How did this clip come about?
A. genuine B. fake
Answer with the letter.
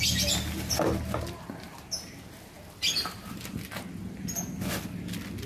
A